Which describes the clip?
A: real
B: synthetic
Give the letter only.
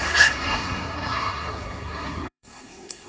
B